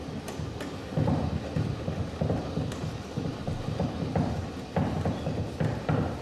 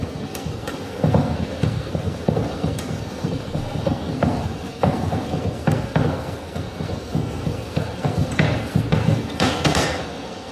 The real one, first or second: first